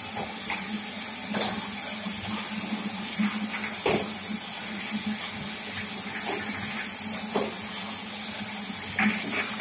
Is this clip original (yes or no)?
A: yes